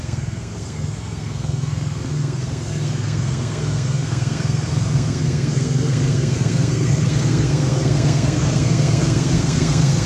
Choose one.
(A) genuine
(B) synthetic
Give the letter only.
B